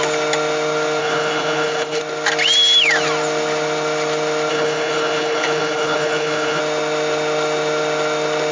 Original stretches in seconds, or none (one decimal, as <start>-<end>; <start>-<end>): 0.0-1.0; 2.0-4.5; 6.6-8.5